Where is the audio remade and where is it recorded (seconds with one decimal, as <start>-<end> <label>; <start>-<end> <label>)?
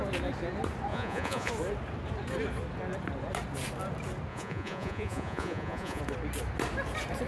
0.0-0.9 recorded; 0.9-1.5 remade; 1.5-4.3 recorded; 4.3-6.0 remade; 6.0-7.3 recorded